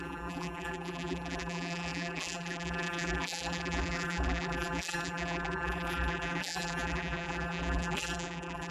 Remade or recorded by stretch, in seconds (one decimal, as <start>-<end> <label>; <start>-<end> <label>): 0.0-8.7 remade